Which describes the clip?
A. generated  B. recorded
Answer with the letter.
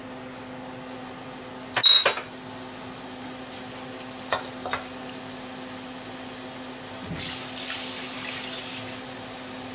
B